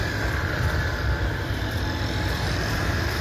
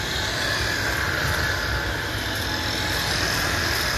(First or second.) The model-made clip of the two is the first